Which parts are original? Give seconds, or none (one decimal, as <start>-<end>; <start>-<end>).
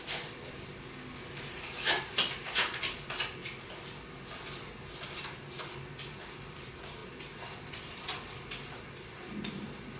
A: 0.0-10.0